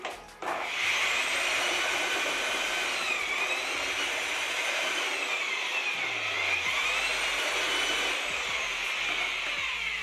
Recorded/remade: recorded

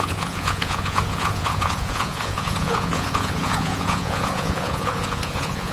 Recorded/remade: remade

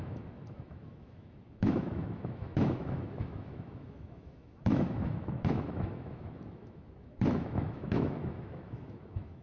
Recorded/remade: remade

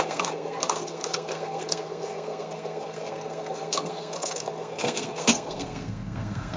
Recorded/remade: remade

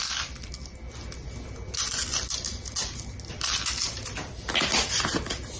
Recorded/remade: recorded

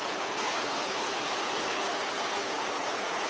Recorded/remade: remade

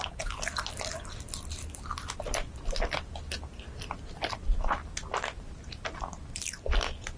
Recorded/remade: recorded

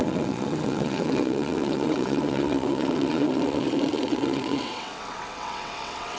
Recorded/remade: remade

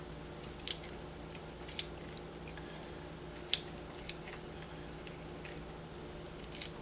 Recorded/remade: recorded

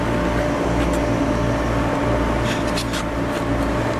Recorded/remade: recorded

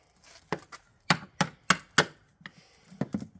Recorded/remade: recorded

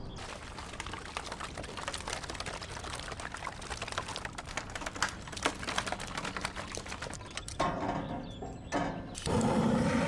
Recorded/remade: recorded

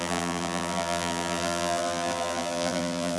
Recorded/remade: remade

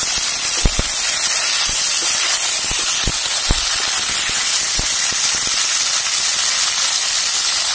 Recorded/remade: recorded